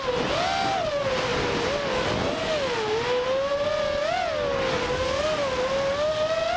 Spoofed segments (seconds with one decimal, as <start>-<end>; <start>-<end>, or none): none